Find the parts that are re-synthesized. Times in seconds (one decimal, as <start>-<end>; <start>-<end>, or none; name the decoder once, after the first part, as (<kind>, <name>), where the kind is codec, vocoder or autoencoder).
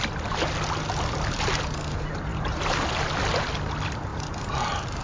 none